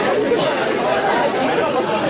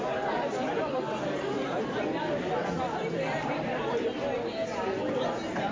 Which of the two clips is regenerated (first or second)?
first